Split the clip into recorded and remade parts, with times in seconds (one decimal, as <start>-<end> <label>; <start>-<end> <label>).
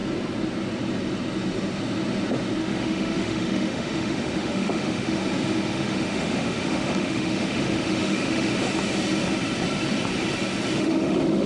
0.0-2.6 recorded; 2.6-5.2 remade; 5.2-5.7 recorded; 5.7-8.5 remade; 8.5-10.8 recorded; 10.8-11.5 remade